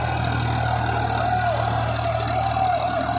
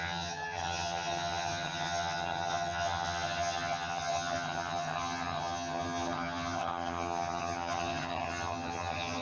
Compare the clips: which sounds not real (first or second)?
second